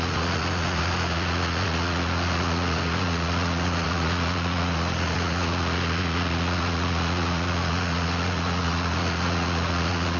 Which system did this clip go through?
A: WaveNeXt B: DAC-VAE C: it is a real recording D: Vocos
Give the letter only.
D